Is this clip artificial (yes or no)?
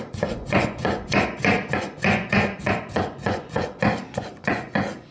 yes